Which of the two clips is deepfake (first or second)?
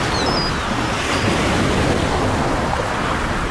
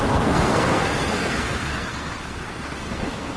second